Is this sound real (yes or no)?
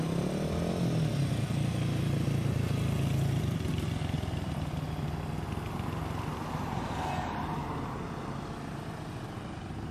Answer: yes